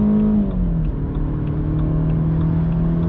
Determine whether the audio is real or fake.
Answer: real